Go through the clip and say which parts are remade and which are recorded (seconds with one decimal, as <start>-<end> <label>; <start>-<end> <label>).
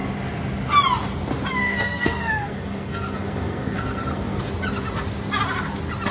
0.0-1.6 recorded; 1.6-4.4 remade; 4.4-6.1 recorded